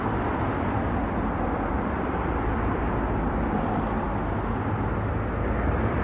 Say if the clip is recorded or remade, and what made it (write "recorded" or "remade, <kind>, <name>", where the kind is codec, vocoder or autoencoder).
recorded